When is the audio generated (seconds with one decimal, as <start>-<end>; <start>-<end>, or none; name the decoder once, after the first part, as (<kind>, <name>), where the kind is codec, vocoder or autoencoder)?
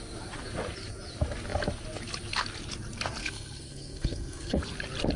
3.2-4.6 (codec, SNAC)